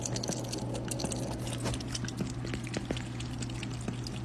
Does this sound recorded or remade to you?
recorded